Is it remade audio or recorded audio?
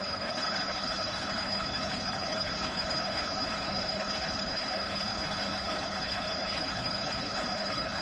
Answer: remade